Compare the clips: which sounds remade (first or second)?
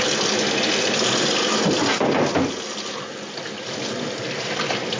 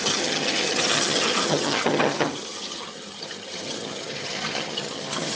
second